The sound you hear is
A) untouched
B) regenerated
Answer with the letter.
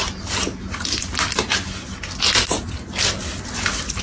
A